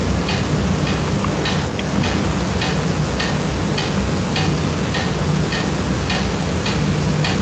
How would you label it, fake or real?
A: real